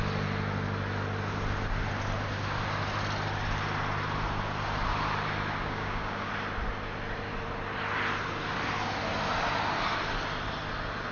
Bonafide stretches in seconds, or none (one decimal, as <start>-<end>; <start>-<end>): 0.0-5.6; 6.3-11.1